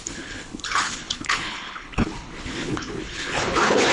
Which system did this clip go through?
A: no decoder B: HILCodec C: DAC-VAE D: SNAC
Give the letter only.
B